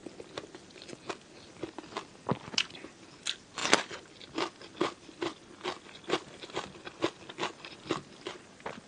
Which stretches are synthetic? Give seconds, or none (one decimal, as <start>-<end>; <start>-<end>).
none